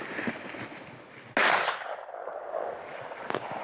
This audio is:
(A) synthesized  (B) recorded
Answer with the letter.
B